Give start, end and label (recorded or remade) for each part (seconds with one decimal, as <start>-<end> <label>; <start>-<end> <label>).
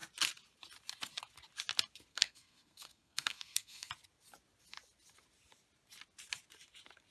0.0-2.1 recorded; 2.1-3.9 remade; 3.9-7.1 recorded